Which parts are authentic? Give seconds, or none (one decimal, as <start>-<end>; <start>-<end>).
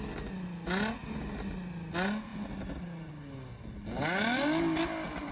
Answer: 0.0-5.3